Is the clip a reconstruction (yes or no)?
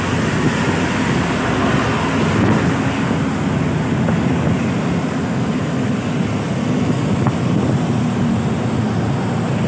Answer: no